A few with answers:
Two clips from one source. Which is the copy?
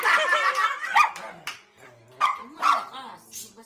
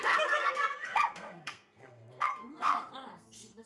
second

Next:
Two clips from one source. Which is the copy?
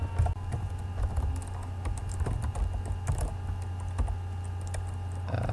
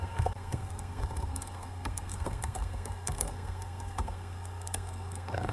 second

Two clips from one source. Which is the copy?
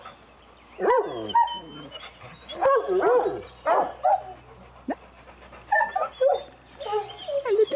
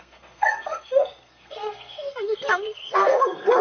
second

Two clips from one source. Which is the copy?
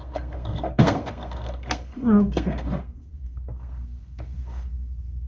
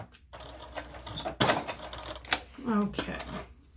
first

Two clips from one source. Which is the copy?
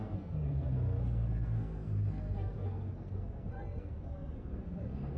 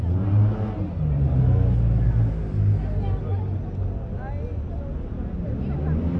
first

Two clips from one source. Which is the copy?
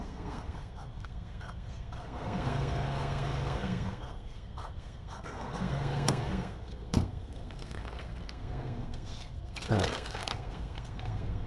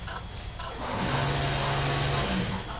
first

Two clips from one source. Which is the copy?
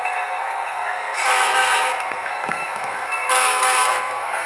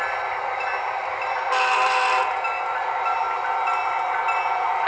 first